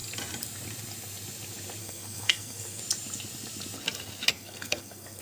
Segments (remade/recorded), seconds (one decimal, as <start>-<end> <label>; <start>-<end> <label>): 0.0-1.8 recorded; 1.8-2.8 remade; 2.8-4.3 recorded; 4.3-5.2 remade